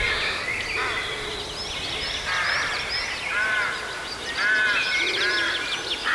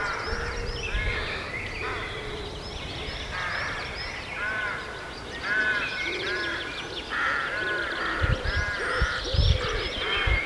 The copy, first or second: second